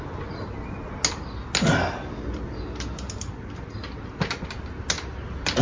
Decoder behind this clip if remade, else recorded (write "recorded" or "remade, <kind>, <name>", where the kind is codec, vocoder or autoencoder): recorded